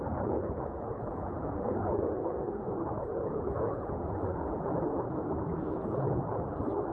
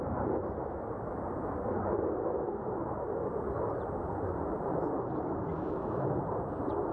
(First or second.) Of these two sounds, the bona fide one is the second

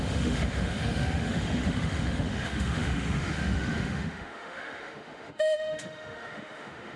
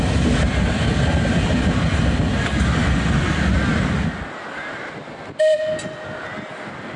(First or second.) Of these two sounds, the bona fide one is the second